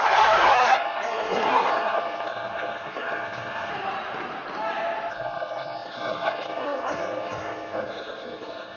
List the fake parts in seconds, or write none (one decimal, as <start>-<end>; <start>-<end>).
0.0-3.7; 5.1-8.8